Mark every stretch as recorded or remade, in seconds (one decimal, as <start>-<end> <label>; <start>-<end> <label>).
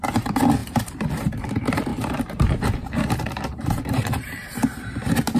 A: 0.0-5.4 remade